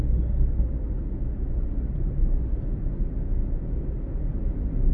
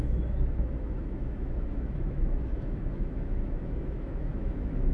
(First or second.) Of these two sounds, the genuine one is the first